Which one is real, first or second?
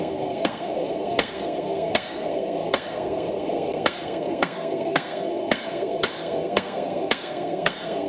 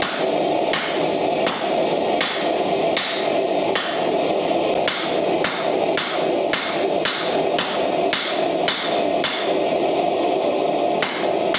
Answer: second